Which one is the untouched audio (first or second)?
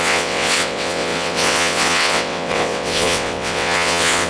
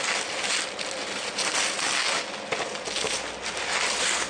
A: second